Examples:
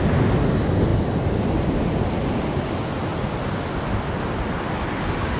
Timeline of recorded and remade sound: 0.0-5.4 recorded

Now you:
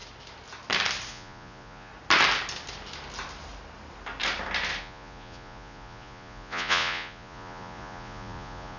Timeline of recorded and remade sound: 0.0-1.1 recorded; 1.1-1.9 remade; 1.9-4.8 recorded; 4.8-8.8 remade

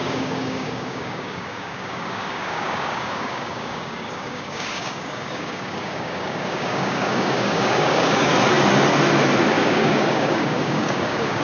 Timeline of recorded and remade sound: 0.0-8.3 remade; 8.3-9.5 recorded; 9.5-11.4 remade

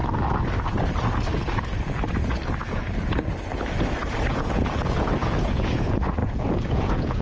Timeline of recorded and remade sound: 0.0-4.3 recorded; 4.3-7.2 remade

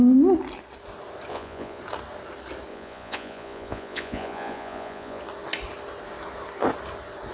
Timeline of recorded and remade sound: 0.0-1.3 recorded; 1.3-1.8 remade; 1.8-2.7 recorded; 2.7-5.2 remade; 5.2-7.3 recorded